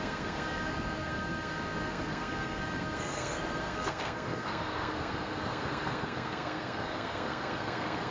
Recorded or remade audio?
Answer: remade